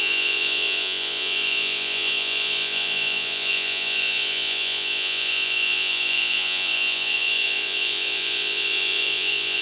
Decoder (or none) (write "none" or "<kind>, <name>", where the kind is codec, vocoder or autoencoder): vocoder, Vocos